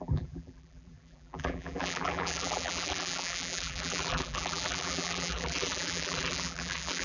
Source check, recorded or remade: remade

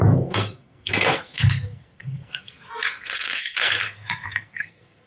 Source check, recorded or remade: remade